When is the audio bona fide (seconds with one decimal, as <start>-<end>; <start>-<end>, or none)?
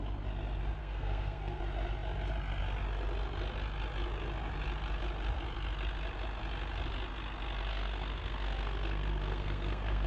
0.0-0.8; 1.6-7.7